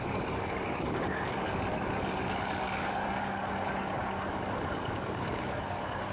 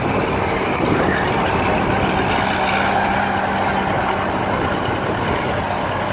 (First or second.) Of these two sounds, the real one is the second